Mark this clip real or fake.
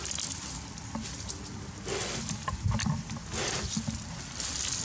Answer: real